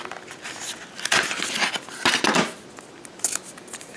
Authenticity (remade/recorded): recorded